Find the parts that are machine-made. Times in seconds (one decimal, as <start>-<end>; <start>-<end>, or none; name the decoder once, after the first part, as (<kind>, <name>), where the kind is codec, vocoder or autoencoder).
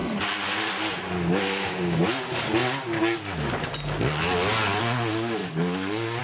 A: 5.4-6.2 (codec, DAC)